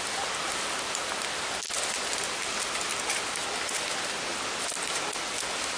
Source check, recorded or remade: recorded